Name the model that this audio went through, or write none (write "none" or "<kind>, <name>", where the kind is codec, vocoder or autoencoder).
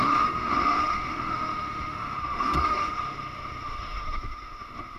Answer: autoencoder, DAC-VAE